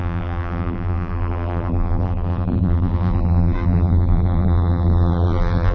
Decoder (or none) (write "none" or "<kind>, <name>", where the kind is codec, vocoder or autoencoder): vocoder, BigVGAN v2